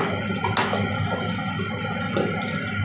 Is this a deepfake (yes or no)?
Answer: no